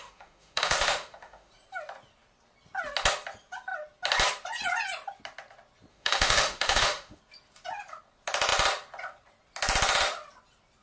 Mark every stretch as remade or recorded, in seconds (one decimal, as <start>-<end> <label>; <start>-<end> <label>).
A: 0.0-1.5 remade; 1.5-5.9 recorded; 5.9-7.2 remade; 7.2-10.8 recorded